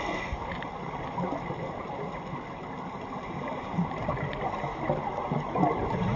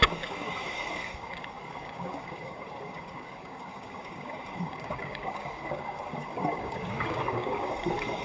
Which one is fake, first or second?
second